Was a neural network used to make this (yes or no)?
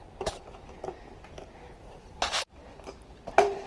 yes